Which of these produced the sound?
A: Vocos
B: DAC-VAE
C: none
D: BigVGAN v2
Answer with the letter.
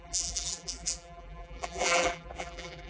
D